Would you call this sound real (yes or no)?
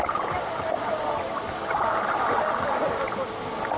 yes